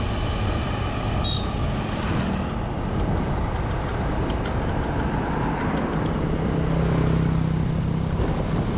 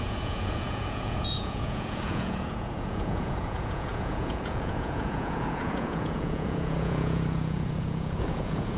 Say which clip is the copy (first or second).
second